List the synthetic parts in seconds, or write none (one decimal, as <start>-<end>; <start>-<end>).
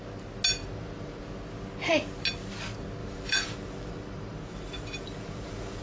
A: 0.6-1.2; 3.0-5.8